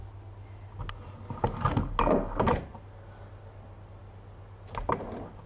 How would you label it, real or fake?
real